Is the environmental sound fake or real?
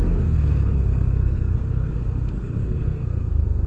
fake